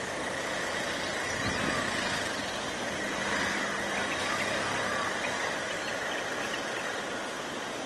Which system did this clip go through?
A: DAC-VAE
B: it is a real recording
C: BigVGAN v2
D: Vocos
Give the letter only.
B